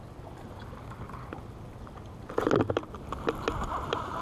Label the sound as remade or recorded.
recorded